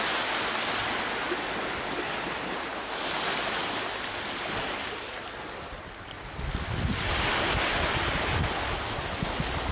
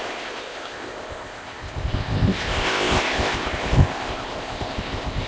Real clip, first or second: first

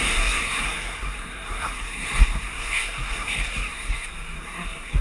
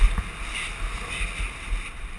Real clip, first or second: second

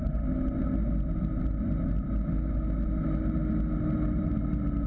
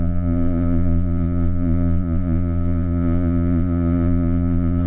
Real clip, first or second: first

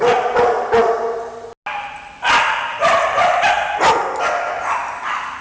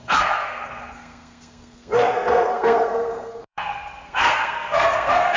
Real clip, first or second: first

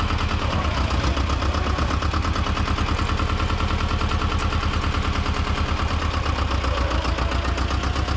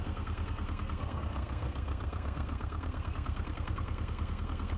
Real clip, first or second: first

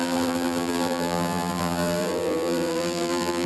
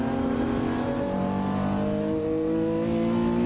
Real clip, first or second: second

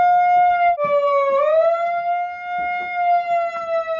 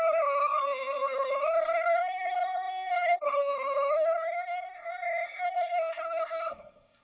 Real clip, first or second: first